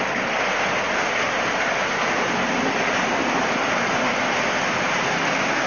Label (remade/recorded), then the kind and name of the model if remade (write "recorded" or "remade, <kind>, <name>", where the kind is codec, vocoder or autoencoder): recorded